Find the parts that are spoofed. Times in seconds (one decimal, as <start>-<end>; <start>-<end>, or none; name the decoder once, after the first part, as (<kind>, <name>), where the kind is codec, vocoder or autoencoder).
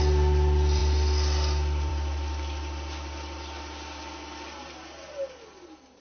none